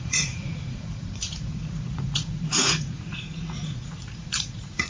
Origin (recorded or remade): remade